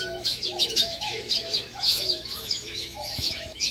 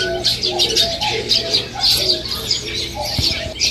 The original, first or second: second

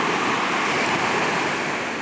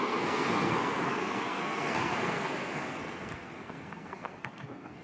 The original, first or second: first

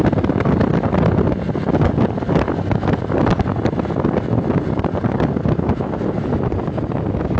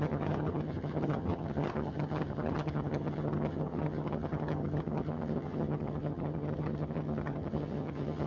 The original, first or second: first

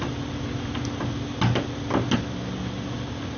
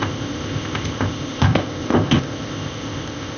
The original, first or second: first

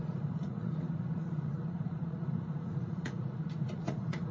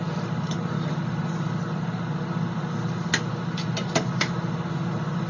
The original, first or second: second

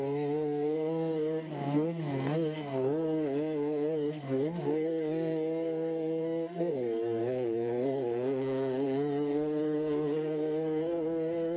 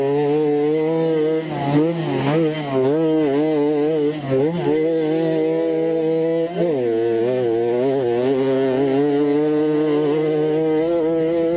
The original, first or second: second